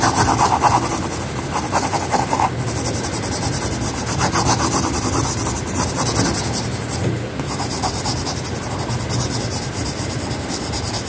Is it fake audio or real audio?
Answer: real